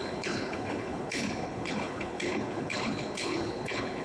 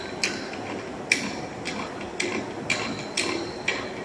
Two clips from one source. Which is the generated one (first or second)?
first